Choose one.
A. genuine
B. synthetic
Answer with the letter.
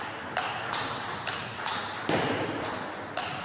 A